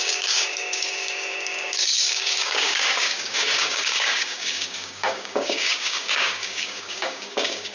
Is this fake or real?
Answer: fake